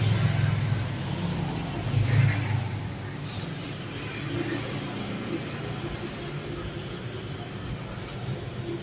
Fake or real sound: real